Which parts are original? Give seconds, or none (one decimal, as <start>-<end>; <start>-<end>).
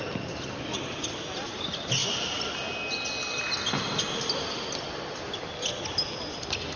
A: 0.0-6.8